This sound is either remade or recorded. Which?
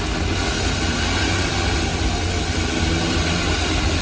recorded